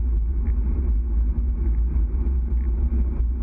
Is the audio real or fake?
real